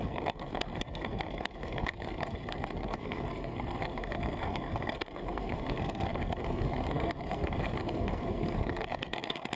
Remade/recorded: remade